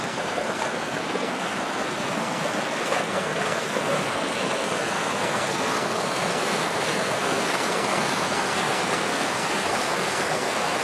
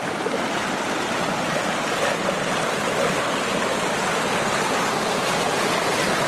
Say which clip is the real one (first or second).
second